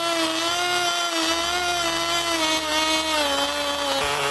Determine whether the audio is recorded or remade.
recorded